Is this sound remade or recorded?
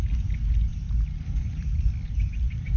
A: recorded